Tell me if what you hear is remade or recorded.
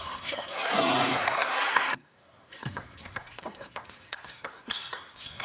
remade